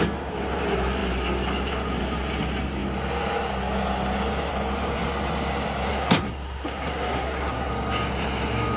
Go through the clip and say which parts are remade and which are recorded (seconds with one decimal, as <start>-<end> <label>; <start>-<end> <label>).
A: 0.0-5.9 recorded; 5.9-7.7 remade; 7.7-8.8 recorded